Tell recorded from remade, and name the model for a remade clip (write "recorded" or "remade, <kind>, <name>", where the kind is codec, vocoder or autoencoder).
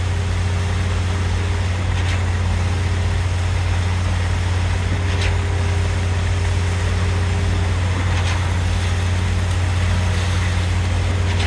recorded